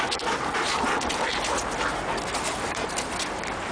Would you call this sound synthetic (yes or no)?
yes